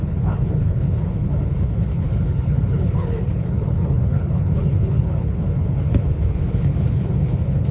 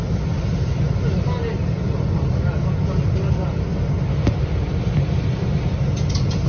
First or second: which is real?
second